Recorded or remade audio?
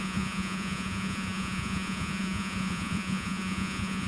remade